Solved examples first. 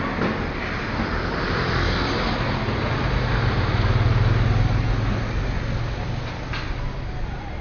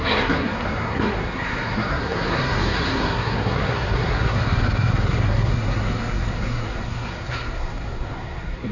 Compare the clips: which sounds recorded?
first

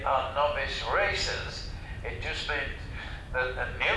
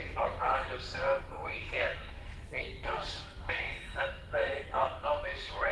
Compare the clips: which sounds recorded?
first